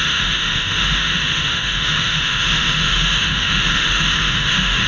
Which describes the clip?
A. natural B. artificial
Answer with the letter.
B